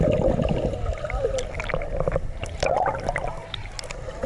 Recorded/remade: recorded